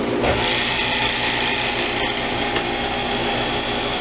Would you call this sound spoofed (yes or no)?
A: no